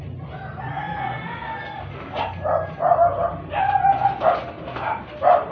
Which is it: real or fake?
real